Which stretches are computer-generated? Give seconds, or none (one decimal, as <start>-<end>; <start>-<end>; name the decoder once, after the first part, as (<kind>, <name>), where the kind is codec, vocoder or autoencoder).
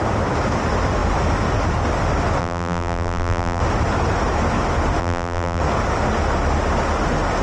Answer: 2.4-3.6 (vocoder, BigVGAN v2); 5.0-5.6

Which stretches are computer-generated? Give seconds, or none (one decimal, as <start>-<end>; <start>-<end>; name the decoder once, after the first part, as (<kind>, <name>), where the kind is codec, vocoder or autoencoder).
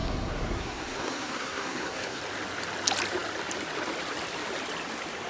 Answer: 0.0-2.2 (codec, SNAC)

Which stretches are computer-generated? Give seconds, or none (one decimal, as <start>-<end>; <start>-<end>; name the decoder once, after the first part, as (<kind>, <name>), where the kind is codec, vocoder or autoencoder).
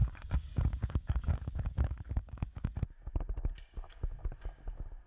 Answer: 0.0-3.1 (codec, DAC)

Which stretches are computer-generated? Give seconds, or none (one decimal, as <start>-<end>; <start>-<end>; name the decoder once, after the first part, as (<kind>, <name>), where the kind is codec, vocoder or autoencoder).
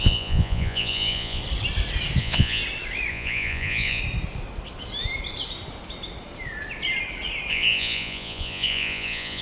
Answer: 0.0-1.4 (vocoder, Vocos); 2.2-2.6; 3.1-4.0; 7.5-9.4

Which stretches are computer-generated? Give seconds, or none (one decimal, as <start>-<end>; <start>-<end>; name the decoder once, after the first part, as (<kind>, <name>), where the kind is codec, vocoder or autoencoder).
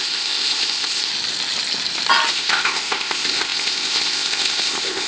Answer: 0.0-1.1 (codec, ZipCodec); 2.3-5.1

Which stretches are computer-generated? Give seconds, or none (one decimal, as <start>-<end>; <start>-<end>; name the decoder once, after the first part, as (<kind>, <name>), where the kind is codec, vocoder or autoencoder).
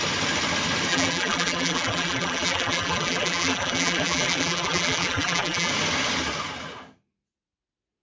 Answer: 0.9-5.7 (vocoder, BigVGAN v2)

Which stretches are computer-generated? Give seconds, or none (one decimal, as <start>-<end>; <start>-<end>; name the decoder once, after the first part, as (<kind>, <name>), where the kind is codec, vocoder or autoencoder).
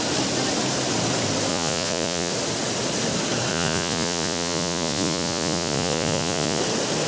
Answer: 1.5-2.3 (vocoder, Vocos); 3.5-6.6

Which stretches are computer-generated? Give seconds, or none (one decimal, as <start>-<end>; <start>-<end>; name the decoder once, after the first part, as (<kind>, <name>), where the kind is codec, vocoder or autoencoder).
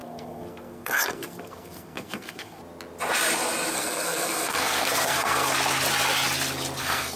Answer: 0.0-2.6 (codec, SNAC); 3.7-5.5; 6.8-7.2